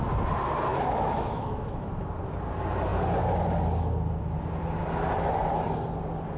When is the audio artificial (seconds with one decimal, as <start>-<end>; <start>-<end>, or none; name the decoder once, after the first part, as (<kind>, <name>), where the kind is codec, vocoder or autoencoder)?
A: 0.7-1.9 (autoencoder, DAC-VAE)